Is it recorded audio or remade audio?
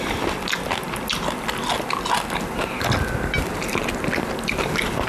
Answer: recorded